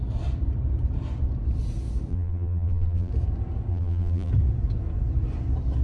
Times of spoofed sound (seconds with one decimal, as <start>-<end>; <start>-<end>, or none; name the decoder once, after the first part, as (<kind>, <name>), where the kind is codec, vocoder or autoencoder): 2.1-3.1 (vocoder, BigVGAN v2); 3.7-4.3